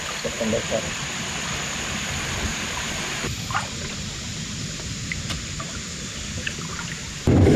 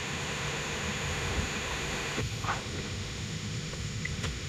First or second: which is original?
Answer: first